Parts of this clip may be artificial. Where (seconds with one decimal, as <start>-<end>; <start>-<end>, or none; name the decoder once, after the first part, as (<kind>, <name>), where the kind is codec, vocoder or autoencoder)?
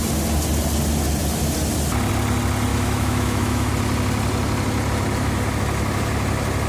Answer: 2.7-3.7 (autoencoder, DAC-VAE)